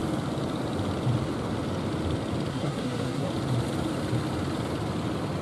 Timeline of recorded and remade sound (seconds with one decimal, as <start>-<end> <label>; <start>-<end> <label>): 0.0-2.5 recorded; 2.5-3.3 remade; 3.3-5.4 recorded